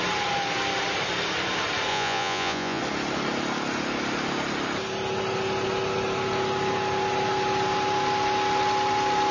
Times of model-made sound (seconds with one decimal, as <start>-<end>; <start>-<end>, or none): 1.9-2.8